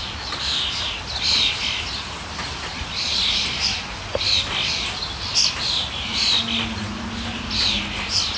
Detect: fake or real real